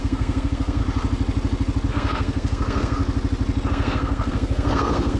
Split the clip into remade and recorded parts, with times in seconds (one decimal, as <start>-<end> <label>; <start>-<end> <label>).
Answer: 0.0-0.8 remade; 0.8-1.9 recorded; 1.9-3.0 remade; 3.0-3.7 recorded; 3.7-5.2 remade